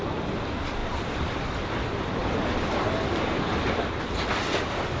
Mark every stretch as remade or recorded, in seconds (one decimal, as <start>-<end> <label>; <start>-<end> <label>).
0.0-5.0 recorded